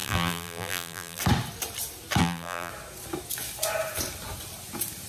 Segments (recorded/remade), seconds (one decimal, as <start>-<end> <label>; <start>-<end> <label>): 0.0-1.2 remade; 1.2-2.2 recorded; 2.2-2.7 remade; 2.7-5.1 recorded